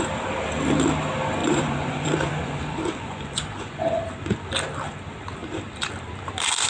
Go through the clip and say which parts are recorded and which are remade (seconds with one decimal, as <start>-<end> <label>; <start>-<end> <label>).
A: 0.0-1.4 recorded; 1.4-4.0 remade; 4.0-6.7 recorded